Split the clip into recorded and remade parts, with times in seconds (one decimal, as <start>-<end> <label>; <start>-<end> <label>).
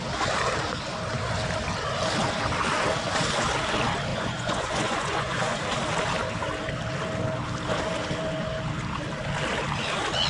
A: 0.0-4.1 recorded; 4.1-5.6 remade; 5.6-10.3 recorded